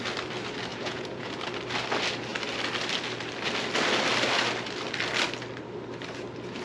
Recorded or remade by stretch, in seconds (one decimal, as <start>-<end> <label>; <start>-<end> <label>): 0.0-0.7 recorded; 0.7-1.3 remade; 1.3-6.6 recorded